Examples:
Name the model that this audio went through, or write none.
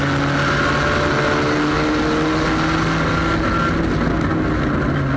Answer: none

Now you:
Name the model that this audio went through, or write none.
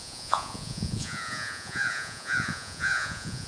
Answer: vocoder, Vocos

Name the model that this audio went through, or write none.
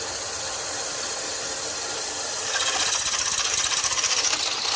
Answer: none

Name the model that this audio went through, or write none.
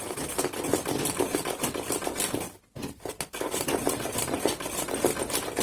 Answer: none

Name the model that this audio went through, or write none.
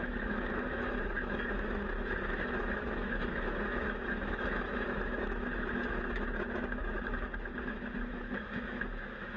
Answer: autoencoder, DAC-VAE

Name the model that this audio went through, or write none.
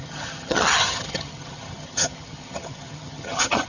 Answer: vocoder, HiFi-GAN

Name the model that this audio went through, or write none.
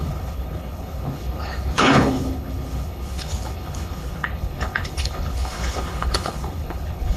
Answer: codec, HILCodec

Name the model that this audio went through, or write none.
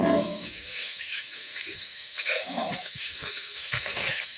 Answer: codec, SNAC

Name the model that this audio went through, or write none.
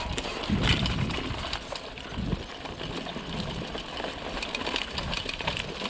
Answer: none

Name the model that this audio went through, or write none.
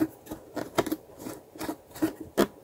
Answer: none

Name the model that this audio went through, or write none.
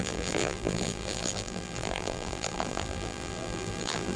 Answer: vocoder, BigVGAN v2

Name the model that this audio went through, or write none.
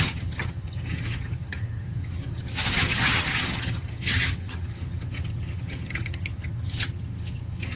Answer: vocoder, HiFi-GAN